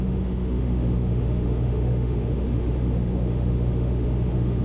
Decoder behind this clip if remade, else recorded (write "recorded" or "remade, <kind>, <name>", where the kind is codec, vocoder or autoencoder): remade, autoencoder, DAC-VAE